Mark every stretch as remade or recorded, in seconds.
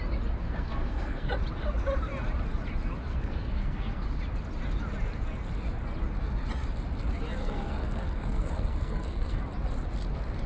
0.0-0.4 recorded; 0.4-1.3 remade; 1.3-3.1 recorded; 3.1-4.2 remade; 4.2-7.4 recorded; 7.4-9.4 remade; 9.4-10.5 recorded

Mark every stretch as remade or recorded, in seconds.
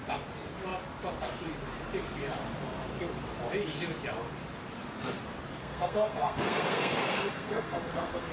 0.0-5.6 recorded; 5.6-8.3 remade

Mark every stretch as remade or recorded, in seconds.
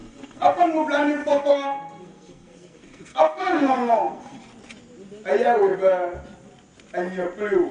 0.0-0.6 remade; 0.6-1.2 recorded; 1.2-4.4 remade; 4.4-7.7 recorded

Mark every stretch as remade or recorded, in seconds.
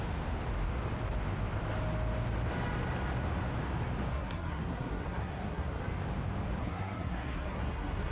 0.0-4.1 recorded; 4.1-5.8 remade; 5.8-6.6 recorded; 6.6-8.1 remade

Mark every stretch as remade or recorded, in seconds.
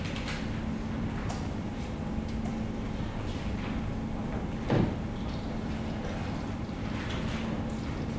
0.0-8.2 recorded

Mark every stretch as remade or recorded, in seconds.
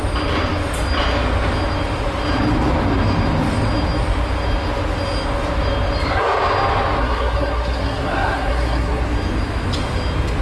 0.0-7.0 recorded; 7.0-9.0 remade; 9.0-10.4 recorded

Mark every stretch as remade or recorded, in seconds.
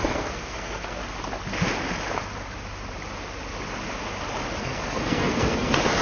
0.0-1.0 remade; 1.0-4.6 recorded; 4.6-6.0 remade